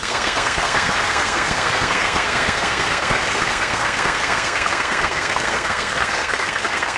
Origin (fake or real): fake